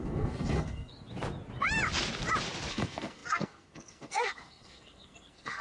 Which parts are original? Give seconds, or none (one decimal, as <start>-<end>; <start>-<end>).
0.9-2.7